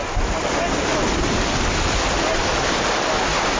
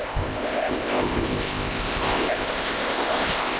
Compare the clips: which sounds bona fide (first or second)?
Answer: first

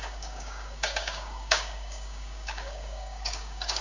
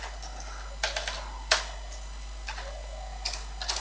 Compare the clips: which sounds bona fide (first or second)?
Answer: second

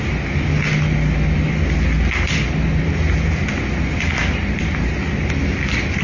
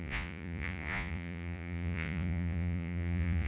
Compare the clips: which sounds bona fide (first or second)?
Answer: first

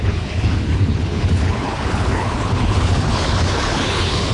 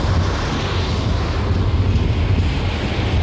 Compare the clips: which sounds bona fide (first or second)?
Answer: second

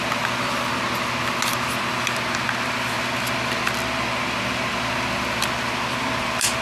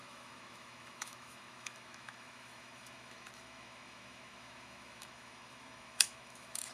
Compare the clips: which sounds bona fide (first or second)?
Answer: first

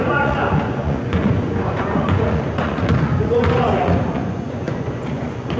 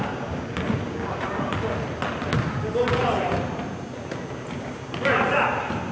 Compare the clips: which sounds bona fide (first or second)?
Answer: second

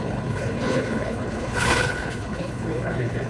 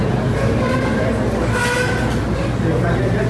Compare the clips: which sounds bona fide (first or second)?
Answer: second